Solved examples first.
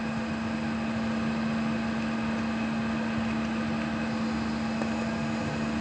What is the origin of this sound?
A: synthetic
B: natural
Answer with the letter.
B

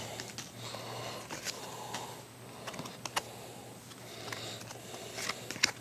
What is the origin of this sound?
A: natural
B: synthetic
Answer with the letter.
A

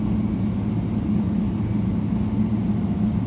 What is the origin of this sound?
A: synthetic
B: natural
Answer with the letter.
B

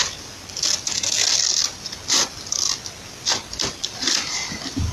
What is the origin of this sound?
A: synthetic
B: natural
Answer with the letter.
B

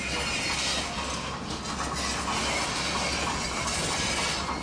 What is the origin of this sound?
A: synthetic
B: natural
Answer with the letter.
B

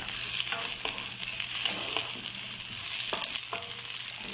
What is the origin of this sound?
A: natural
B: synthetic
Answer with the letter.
A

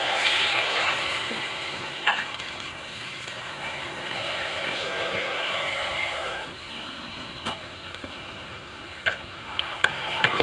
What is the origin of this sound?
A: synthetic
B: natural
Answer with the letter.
A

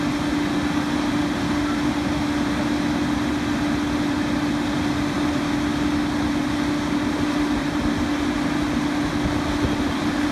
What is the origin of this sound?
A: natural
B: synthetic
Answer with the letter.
A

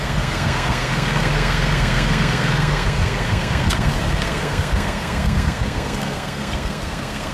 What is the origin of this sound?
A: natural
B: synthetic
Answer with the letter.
B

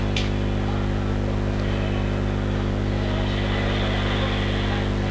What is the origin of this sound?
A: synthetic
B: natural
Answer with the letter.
B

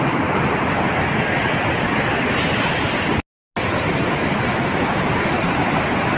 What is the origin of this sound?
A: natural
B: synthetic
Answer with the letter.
A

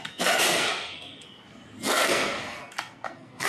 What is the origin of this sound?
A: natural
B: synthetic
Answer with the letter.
B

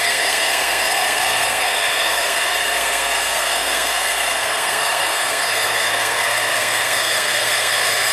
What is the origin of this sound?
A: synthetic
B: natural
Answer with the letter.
A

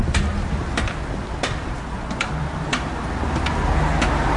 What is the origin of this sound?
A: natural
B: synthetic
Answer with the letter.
A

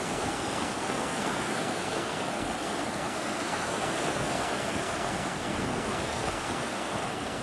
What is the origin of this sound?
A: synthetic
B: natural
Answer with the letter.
A